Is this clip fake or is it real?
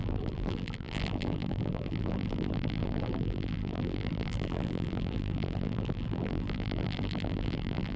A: fake